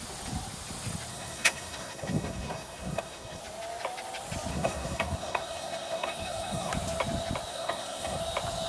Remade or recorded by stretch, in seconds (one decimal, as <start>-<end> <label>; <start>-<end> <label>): 0.0-1.1 recorded; 1.1-3.4 remade; 3.4-4.5 recorded; 4.5-6.7 remade; 6.7-7.5 recorded; 7.5-8.2 remade; 8.2-8.7 recorded